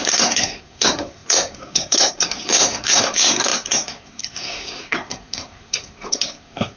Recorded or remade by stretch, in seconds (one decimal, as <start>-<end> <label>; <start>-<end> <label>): 0.0-6.8 remade